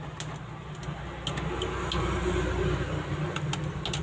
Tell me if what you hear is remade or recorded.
recorded